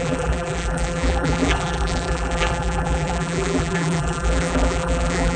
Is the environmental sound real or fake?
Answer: fake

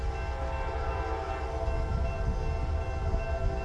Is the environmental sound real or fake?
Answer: real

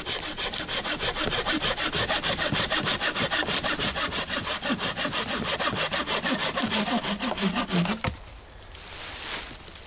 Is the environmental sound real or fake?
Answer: real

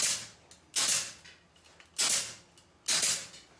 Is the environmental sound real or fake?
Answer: real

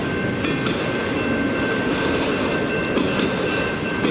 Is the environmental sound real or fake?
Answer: real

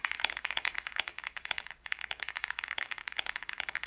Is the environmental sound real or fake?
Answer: fake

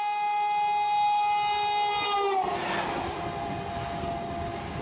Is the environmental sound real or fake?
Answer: real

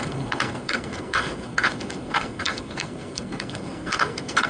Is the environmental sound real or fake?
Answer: fake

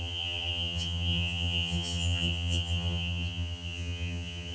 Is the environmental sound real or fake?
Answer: fake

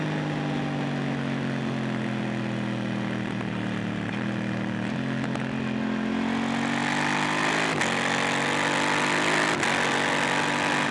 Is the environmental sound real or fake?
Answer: real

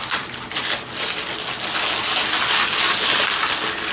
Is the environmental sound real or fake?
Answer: real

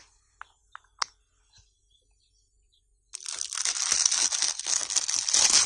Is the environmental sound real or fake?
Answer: real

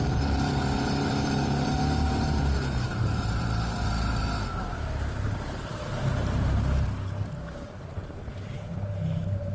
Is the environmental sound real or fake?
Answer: fake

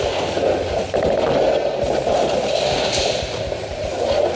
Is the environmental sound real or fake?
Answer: real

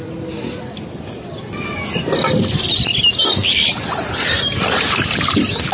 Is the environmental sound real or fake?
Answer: real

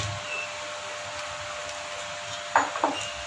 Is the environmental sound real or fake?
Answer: real